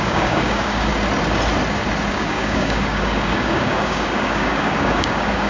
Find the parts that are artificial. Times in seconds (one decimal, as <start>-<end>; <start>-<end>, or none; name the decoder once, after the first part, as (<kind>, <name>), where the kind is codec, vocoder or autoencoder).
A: 0.0-0.9 (codec, DAC); 2.1-5.5